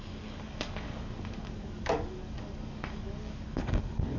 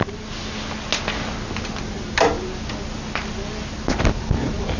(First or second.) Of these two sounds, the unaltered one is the second